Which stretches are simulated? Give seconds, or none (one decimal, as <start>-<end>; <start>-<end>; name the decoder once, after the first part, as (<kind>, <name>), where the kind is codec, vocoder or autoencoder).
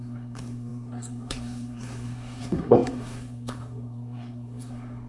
0.0-5.1 (codec, SNAC)